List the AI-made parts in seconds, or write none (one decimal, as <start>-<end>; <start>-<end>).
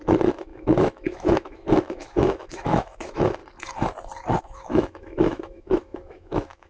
0.0-3.4; 4.4-6.7